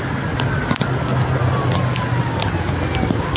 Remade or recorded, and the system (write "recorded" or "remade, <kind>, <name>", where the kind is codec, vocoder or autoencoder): recorded